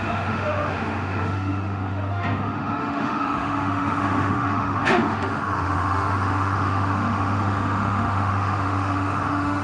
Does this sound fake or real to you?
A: fake